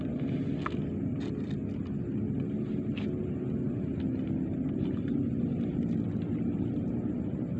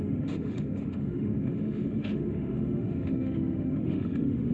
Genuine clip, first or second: first